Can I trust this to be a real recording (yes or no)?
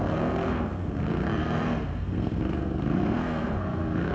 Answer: no